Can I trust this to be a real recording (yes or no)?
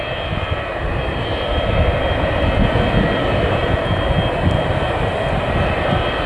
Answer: yes